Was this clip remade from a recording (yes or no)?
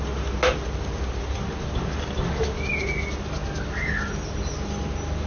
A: no